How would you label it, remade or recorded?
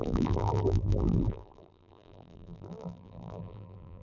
remade